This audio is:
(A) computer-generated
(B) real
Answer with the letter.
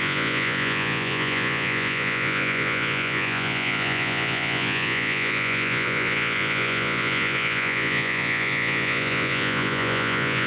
A